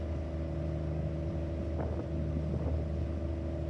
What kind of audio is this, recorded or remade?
recorded